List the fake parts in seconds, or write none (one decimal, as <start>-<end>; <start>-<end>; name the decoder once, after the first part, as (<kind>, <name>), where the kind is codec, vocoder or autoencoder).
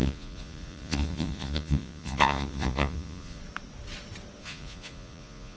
0.0-3.4 (vocoder, Vocos); 4.4-5.6